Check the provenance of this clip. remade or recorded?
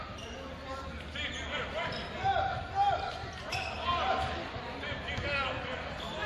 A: recorded